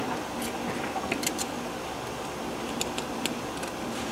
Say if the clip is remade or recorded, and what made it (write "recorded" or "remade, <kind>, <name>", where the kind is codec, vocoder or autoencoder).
recorded